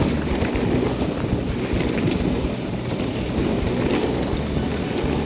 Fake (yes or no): no